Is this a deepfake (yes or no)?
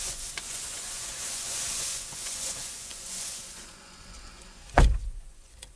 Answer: yes